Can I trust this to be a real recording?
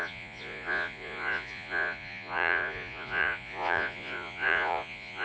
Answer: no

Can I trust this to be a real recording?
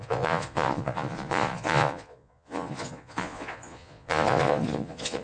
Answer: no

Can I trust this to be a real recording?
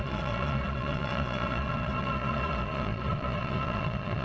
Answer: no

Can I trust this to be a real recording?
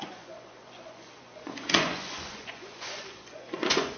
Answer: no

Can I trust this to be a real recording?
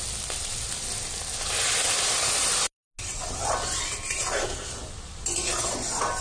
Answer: yes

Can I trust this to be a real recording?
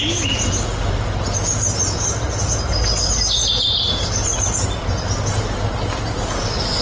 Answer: yes